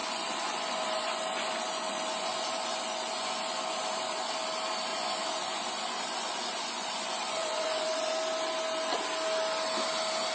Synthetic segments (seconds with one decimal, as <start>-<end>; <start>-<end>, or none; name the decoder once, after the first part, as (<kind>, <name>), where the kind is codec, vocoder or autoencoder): 0.0-4.3 (vocoder, Vocos); 4.9-8.1